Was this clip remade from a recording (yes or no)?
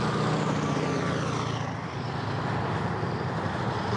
no